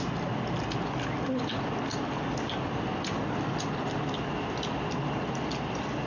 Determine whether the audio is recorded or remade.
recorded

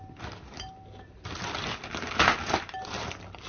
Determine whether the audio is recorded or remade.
recorded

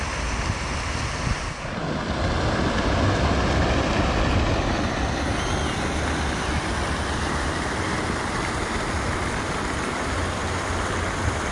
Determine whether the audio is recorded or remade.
recorded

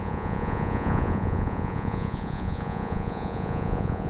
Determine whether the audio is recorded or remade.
remade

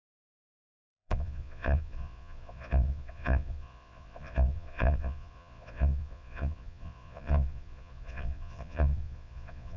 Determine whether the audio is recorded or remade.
remade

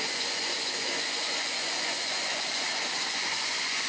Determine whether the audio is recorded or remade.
remade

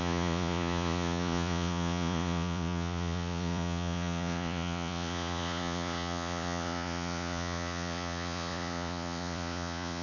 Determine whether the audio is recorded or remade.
remade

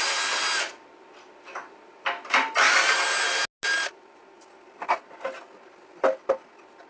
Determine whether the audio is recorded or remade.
recorded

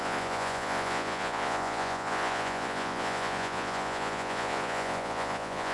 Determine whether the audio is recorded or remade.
remade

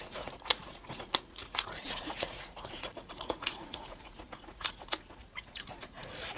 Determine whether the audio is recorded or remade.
remade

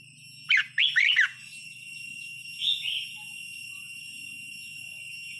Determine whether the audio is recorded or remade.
recorded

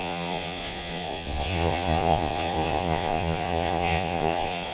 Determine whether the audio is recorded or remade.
remade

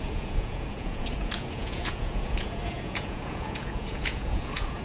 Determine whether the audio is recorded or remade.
remade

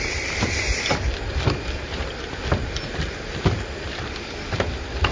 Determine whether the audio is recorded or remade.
recorded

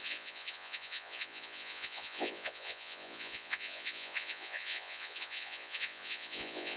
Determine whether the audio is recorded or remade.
remade